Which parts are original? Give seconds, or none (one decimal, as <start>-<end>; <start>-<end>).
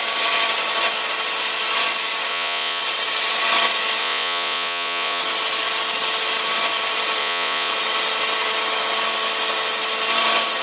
0.0-2.3; 2.8-4.0; 5.2-7.2; 7.7-10.6